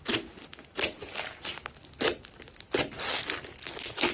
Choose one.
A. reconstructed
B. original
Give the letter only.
B